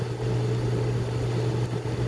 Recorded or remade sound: recorded